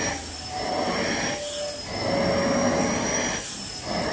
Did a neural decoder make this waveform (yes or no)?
no